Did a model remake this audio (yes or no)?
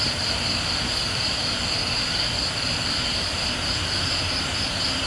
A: yes